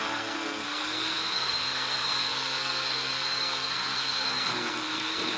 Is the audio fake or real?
fake